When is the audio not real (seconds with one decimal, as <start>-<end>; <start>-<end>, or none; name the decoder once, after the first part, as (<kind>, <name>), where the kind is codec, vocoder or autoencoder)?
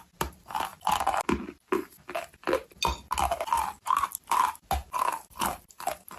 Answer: none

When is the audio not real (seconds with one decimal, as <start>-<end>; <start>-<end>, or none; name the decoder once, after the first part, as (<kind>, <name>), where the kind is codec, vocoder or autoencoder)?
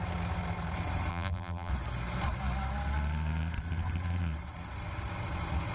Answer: 1.1-1.7 (vocoder, BigVGAN v2)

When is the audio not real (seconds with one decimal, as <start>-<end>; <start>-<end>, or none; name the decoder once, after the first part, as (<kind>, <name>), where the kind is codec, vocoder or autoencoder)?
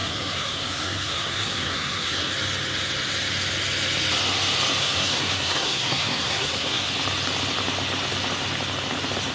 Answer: 0.0-2.3 (codec, SNAC); 4.8-6.9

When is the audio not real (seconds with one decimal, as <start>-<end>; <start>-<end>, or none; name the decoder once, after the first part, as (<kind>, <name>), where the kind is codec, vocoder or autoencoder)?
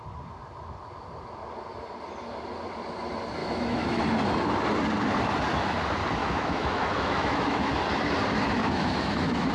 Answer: 3.4-4.0 (autoencoder, DAC-VAE); 6.2-7.7; 8.6-9.5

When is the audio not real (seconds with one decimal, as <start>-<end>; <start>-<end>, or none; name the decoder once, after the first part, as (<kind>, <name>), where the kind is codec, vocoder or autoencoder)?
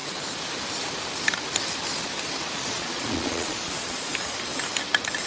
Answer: 2.7-4.1 (vocoder, Vocos)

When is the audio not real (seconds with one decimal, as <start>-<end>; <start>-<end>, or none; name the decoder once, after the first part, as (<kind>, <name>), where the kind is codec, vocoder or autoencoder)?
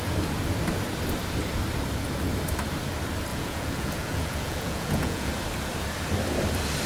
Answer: 3.3-5.3 (vocoder, Vocos)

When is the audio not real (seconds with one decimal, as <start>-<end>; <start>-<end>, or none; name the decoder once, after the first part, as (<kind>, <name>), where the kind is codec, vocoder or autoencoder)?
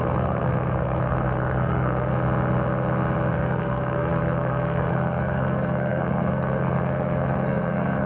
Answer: 0.0-2.1 (codec, SNAC); 3.3-8.1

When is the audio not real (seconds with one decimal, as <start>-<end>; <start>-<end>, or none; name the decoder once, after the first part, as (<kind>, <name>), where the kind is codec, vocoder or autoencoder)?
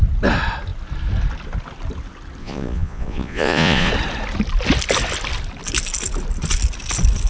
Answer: 2.4-3.9 (vocoder, Vocos)